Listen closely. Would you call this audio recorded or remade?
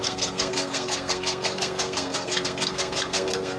remade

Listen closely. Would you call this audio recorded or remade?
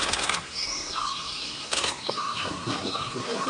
remade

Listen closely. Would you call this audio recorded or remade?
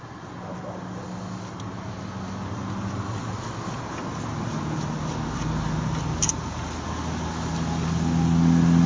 recorded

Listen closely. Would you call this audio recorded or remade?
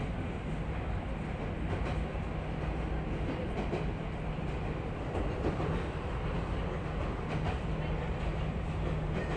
recorded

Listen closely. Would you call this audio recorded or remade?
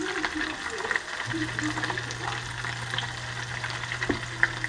recorded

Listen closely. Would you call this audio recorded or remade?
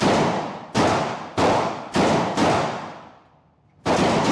recorded